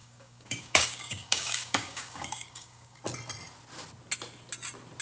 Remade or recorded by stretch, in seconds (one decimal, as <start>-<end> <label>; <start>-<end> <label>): 0.0-3.0 remade; 3.0-5.0 recorded